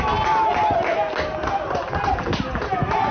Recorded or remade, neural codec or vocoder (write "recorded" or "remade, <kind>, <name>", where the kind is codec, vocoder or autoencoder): recorded